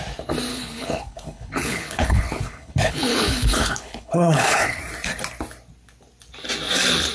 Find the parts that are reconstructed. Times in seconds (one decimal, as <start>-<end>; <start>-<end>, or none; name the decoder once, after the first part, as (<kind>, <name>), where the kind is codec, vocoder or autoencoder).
0.5-4.8 (codec, HILCodec)